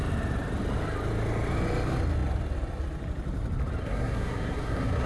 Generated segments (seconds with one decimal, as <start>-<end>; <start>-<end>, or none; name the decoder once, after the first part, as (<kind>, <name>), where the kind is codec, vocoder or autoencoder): 3.8-5.1 (codec, SNAC)